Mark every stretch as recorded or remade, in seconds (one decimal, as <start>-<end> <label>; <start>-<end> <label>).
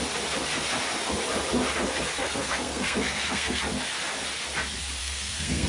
0.0-2.2 recorded; 2.2-3.6 remade; 3.6-5.0 recorded; 5.0-5.7 remade